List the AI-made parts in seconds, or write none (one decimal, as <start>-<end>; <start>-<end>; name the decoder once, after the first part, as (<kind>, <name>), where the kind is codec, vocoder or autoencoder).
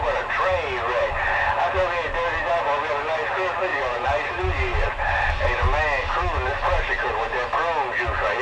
3.7-5.3 (vocoder, BigVGAN v2)